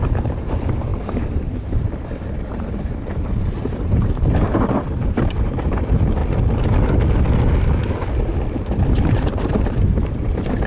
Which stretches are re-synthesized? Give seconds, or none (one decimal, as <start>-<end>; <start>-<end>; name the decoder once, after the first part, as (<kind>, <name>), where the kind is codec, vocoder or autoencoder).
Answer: 0.0-6.2 (vocoder, BigVGAN v2); 8.8-10.7